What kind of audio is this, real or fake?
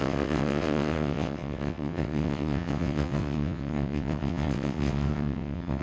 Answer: fake